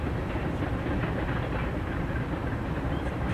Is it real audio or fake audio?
real